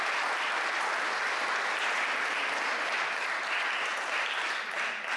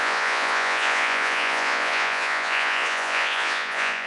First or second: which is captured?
first